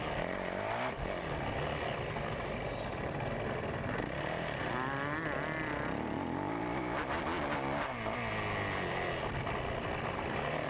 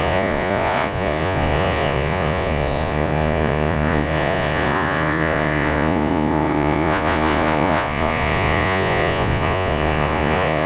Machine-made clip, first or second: second